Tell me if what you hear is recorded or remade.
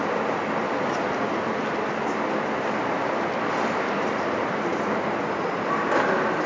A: recorded